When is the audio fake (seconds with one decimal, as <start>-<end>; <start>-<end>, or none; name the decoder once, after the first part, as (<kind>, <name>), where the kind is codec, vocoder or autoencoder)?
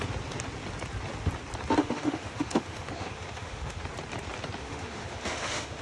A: 1.8-3.8 (autoencoder, DAC-VAE); 4.6-5.8